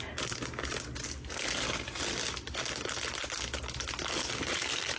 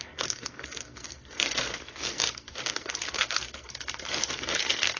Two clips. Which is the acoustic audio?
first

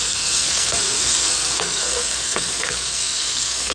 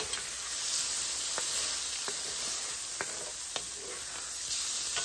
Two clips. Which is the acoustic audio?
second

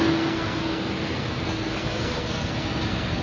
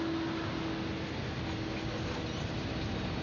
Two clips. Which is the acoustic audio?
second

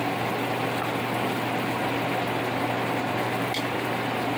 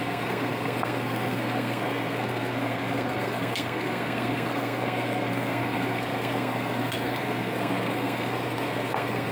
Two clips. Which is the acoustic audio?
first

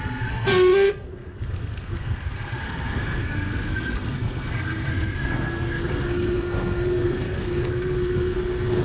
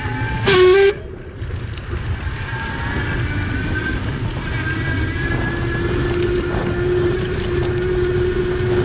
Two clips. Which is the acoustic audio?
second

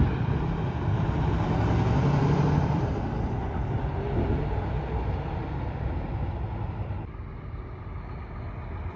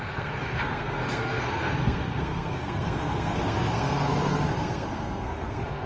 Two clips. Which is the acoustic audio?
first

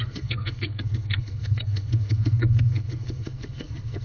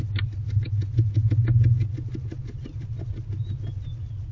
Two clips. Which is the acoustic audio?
second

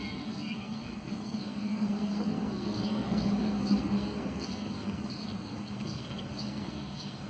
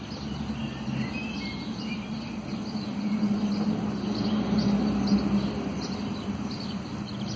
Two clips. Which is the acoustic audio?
second